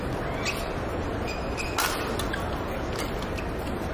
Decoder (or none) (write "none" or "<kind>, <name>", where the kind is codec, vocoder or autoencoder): none